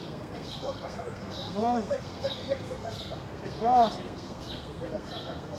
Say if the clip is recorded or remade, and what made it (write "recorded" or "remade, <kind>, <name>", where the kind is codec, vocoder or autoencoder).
remade, codec, SNAC